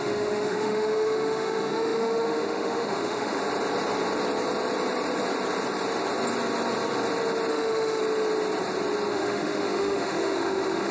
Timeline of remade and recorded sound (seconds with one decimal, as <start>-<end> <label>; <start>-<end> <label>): 0.0-3.4 remade; 3.4-7.5 recorded; 7.5-8.0 remade; 8.0-9.1 recorded; 9.1-10.9 remade